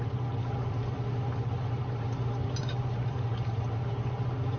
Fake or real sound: fake